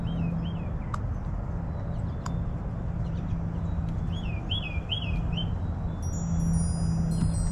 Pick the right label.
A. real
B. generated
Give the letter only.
A